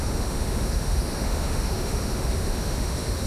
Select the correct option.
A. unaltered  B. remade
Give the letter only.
B